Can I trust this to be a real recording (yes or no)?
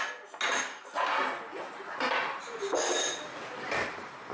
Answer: yes